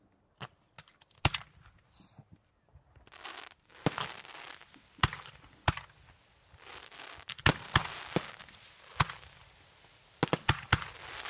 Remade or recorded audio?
recorded